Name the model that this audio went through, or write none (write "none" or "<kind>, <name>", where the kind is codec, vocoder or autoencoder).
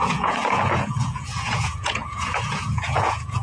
vocoder, Vocos